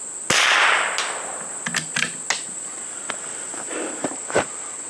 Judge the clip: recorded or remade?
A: recorded